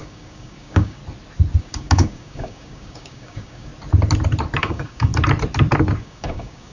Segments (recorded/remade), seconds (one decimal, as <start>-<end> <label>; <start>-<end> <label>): 0.0-1.0 remade; 1.0-1.6 recorded; 1.6-3.7 remade; 3.7-4.6 recorded; 4.6-5.1 remade; 5.1-6.0 recorded; 6.0-6.7 remade